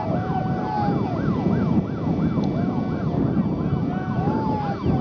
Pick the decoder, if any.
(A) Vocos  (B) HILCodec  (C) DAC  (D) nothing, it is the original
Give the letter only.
D